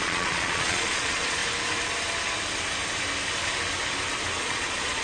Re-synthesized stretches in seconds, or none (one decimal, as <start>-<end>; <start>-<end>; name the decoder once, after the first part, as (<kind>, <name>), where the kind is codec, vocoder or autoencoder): 0.0-1.4 (vocoder, Vocos); 4.4-5.0